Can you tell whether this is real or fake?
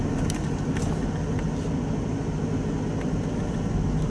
real